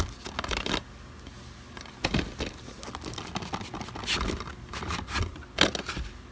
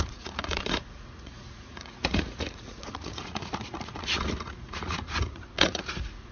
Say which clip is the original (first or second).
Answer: first